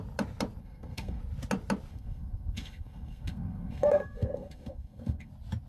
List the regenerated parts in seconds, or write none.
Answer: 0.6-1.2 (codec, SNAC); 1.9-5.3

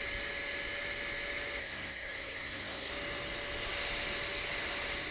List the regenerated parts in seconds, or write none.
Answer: 1.6-2.9 (codec, SNAC)

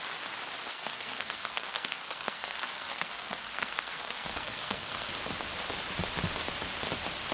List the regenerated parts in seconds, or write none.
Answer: 0.7-5.1 (codec, SNAC)